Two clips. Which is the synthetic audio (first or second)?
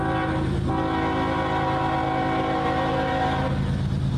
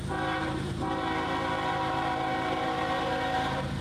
second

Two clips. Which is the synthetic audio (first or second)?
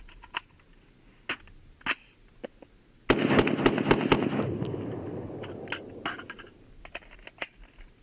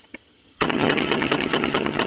second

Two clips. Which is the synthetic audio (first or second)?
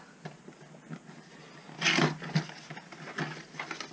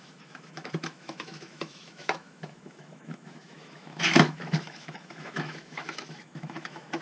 second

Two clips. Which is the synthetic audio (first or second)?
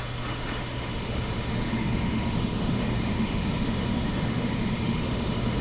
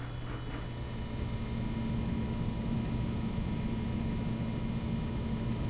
first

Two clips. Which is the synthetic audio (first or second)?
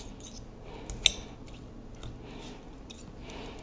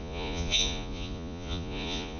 second